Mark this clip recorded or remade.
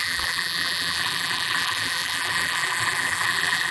remade